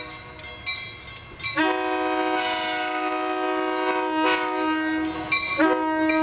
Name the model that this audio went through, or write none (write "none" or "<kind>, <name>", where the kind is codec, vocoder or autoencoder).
none